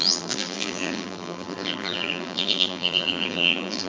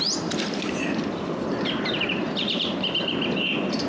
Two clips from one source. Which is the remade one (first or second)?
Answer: first